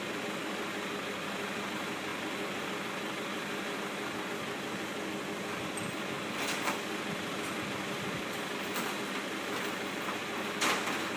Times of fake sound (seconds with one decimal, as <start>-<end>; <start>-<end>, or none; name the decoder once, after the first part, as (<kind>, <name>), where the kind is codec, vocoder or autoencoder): none